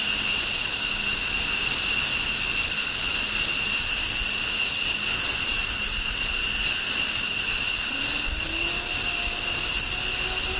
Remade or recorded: recorded